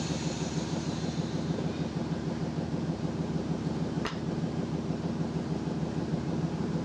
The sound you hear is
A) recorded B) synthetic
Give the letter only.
B